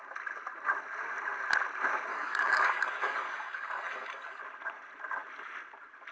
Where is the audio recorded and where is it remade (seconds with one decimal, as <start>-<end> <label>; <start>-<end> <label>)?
0.0-2.1 recorded; 2.1-4.4 remade; 4.4-6.1 recorded